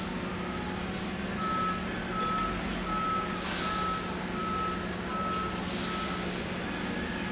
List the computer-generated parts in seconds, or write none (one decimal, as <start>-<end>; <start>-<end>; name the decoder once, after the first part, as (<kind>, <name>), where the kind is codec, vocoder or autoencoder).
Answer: none